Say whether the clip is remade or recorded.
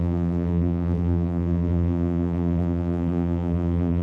remade